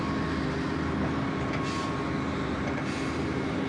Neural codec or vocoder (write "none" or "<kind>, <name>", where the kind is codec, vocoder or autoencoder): none